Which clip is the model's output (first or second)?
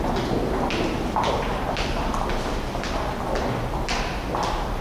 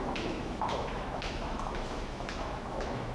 second